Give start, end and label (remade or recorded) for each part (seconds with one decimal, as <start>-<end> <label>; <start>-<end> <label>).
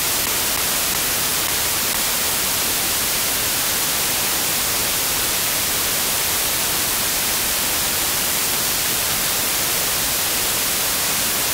0.0-1.3 recorded; 1.3-2.8 remade; 2.8-4.8 recorded; 4.8-9.8 remade; 9.8-11.5 recorded